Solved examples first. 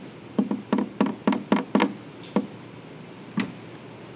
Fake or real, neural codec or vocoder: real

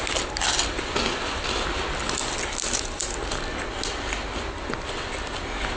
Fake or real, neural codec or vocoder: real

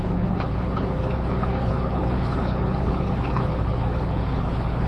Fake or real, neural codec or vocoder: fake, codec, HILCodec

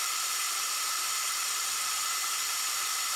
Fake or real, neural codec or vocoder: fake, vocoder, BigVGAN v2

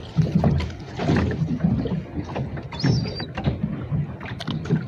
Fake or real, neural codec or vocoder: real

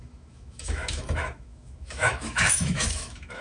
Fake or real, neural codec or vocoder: fake, autoencoder, DAC-VAE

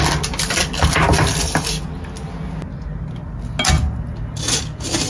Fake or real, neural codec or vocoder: real